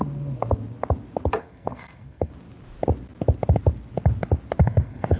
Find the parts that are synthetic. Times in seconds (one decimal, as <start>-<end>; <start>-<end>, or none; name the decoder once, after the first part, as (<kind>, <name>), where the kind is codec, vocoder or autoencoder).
1.4-2.3 (codec, SNAC); 4.6-5.2